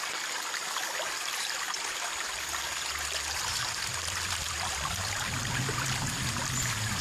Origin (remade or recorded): recorded